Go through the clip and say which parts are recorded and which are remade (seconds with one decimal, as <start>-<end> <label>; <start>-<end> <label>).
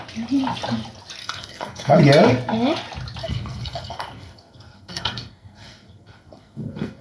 0.0-1.2 recorded; 1.2-2.0 remade; 2.0-3.2 recorded; 3.2-7.0 remade